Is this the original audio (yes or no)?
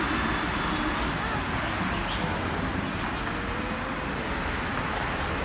yes